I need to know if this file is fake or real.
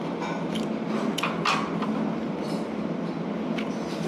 real